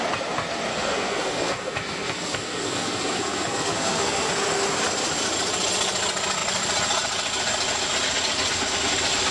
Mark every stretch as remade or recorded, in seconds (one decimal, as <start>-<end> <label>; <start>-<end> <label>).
0.0-0.7 recorded; 0.7-4.3 remade; 4.3-9.3 recorded